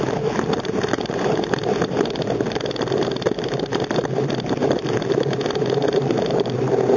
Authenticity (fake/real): real